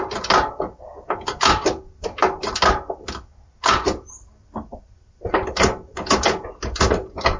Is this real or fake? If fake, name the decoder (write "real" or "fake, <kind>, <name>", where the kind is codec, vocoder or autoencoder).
real